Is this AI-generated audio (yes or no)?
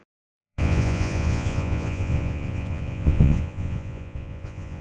yes